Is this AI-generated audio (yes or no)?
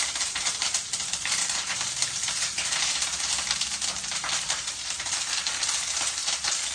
yes